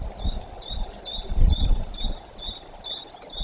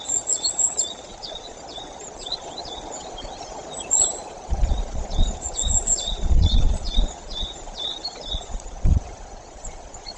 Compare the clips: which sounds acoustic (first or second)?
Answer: first